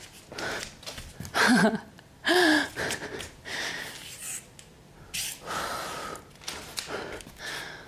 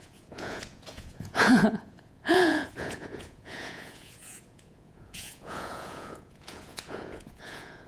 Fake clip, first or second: second